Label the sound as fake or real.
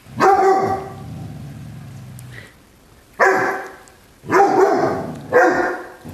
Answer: real